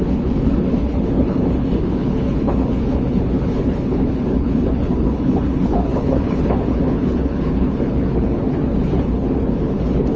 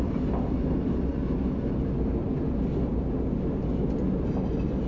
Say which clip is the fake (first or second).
first